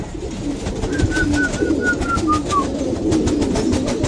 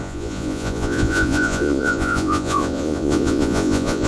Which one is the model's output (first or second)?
second